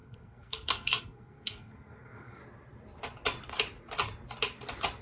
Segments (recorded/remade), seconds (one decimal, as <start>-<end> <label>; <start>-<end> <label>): 0.0-2.4 remade; 2.4-5.0 recorded